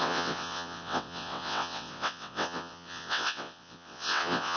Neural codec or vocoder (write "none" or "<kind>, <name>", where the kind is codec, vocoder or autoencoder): vocoder, WaveNeXt